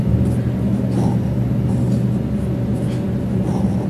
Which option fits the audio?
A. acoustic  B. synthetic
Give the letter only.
A